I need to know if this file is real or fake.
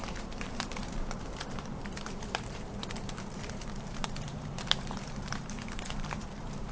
fake